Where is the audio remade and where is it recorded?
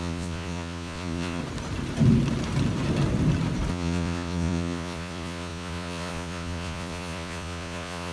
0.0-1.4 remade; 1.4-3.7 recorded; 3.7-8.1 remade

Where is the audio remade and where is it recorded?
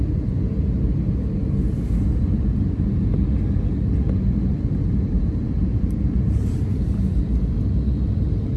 0.0-4.8 recorded; 4.8-6.5 remade; 6.5-8.6 recorded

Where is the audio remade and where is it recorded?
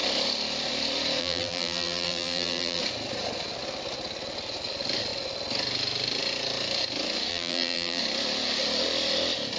0.0-1.2 recorded; 1.2-2.8 remade; 2.8-7.3 recorded; 7.3-8.0 remade; 8.0-9.6 recorded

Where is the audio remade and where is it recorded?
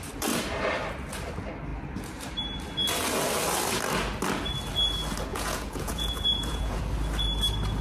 0.0-5.3 recorded; 5.3-6.8 remade; 6.8-7.8 recorded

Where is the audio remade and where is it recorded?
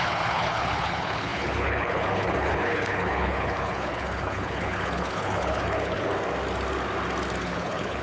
0.0-6.1 remade; 6.1-7.4 recorded; 7.4-8.0 remade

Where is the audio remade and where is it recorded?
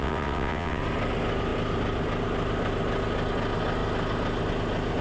0.0-0.8 remade; 0.8-5.0 recorded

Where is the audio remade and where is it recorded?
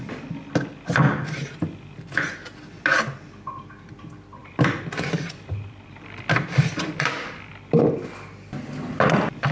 0.0-4.4 recorded; 4.4-7.5 remade; 7.5-9.5 recorded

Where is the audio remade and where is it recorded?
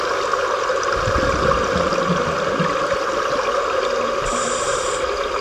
0.0-5.4 recorded